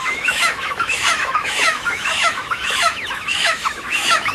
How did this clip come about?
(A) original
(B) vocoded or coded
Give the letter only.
B